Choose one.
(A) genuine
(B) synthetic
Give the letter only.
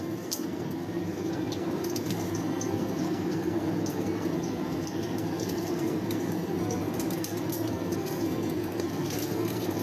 B